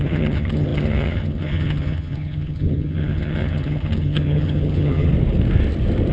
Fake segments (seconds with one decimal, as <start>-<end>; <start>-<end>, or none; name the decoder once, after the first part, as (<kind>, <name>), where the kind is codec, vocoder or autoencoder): 0.0-5.1 (vocoder, HiFi-GAN)